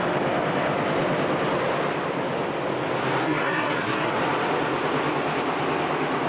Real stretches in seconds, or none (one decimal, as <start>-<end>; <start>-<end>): 0.0-3.2; 4.2-6.3